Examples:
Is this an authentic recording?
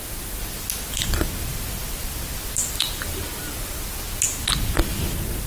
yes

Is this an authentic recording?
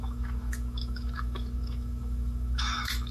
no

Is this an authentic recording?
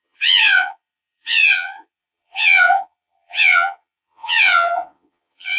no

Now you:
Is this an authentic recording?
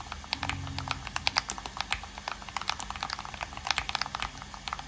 yes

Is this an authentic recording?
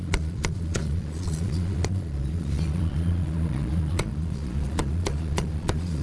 no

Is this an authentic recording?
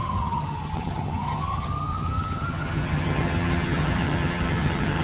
no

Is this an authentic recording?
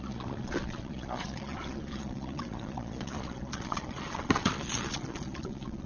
no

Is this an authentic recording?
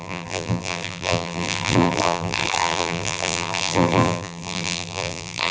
no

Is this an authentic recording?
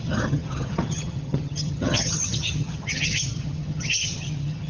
no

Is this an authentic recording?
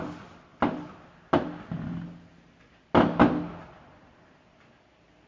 yes